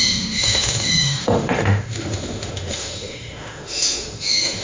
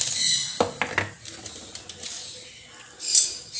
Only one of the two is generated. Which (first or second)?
first